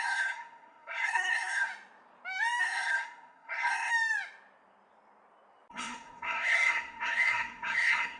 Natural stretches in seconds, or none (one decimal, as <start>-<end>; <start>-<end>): 1.7-2.6; 3.9-5.7

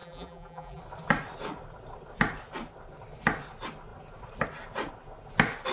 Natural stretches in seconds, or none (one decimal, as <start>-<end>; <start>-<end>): 0.8-5.7